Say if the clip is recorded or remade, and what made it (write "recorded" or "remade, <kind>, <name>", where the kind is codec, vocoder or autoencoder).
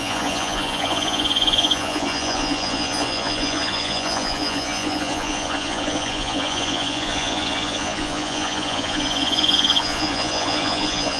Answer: remade, vocoder, Vocos